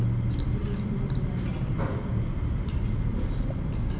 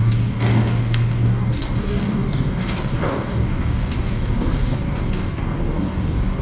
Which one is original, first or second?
first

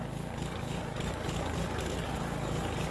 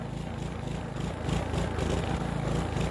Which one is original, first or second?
second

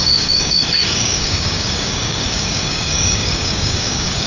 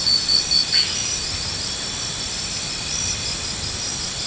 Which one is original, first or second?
second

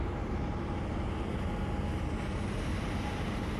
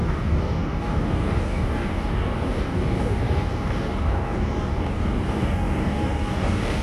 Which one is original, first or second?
first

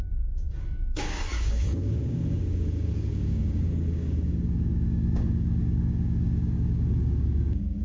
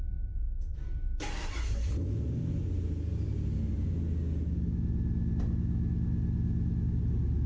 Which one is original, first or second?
second